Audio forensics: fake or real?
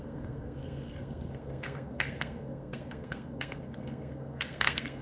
fake